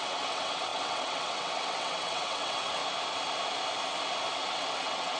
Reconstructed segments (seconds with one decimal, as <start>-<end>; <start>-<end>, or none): 0.0-2.8; 4.5-5.2